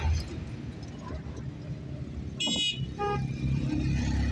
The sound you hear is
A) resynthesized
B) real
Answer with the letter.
B